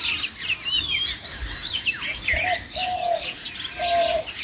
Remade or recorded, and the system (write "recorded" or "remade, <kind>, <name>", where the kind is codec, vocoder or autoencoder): recorded